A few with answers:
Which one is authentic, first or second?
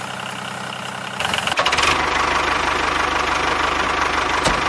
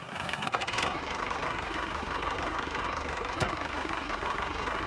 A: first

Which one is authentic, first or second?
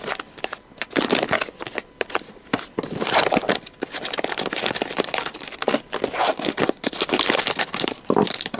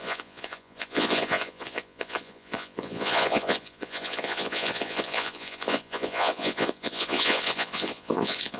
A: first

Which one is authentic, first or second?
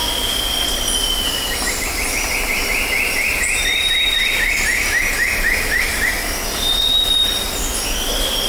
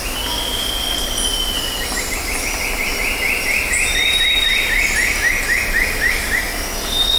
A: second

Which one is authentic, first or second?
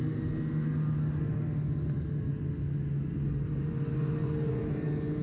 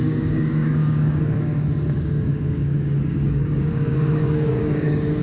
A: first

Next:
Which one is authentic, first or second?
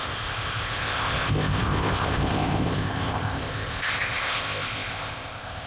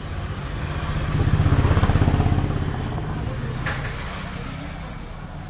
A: second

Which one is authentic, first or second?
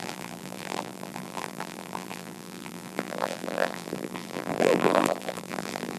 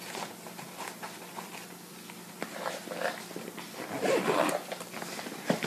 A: second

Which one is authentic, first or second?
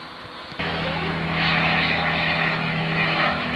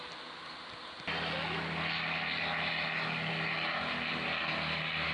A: second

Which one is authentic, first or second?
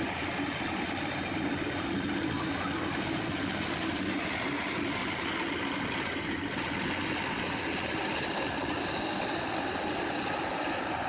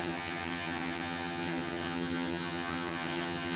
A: first